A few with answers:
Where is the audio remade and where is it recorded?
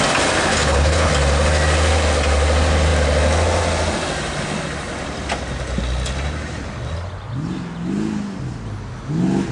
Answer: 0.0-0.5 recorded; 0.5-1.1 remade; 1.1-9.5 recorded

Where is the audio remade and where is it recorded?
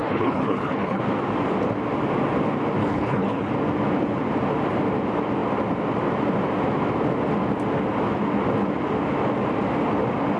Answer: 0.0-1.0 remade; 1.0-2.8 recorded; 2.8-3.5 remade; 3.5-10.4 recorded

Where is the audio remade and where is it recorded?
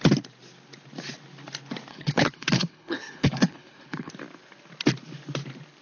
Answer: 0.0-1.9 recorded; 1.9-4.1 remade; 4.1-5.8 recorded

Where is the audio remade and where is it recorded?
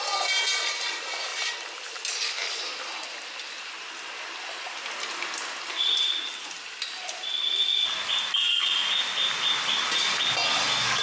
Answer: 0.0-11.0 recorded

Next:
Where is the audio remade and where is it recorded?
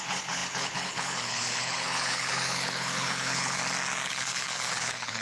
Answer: 0.0-3.6 remade; 3.6-4.1 recorded; 4.1-5.2 remade